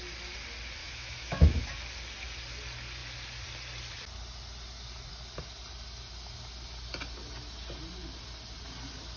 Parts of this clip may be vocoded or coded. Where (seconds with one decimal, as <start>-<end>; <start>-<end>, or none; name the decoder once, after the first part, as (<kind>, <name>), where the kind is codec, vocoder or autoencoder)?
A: 0.8-1.6 (autoencoder, DAC-VAE)